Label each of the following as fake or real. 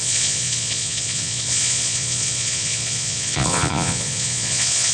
fake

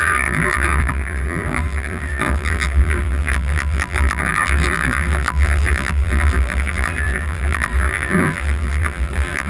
fake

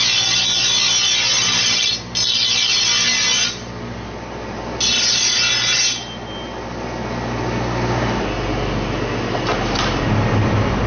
real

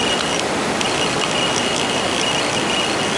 real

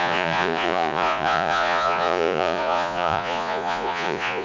fake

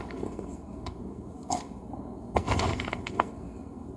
fake